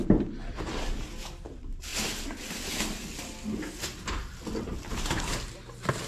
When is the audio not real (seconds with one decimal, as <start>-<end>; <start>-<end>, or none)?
0.0-1.9; 3.7-6.1